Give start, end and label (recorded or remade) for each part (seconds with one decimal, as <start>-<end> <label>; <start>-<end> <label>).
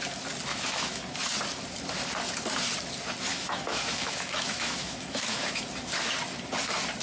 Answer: 0.0-0.5 recorded; 0.5-1.0 remade; 1.0-3.3 recorded; 3.3-5.6 remade; 5.6-7.0 recorded